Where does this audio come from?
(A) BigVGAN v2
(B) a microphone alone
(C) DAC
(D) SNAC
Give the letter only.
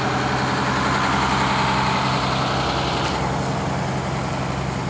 B